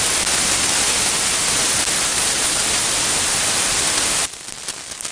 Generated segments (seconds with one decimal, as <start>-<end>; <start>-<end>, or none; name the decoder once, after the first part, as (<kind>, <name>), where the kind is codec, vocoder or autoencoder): 2.1-2.6 (vocoder, Vocos)